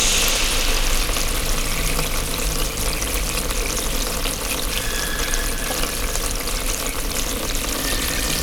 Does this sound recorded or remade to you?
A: recorded